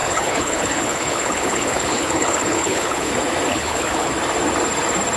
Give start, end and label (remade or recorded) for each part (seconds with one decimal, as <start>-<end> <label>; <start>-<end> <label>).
0.0-3.1 remade; 3.1-3.5 recorded; 3.5-4.1 remade; 4.1-5.2 recorded